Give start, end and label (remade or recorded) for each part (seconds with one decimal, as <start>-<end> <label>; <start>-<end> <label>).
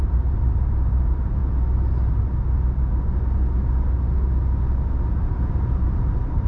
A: 0.0-1.4 remade; 1.4-5.3 recorded; 5.3-6.5 remade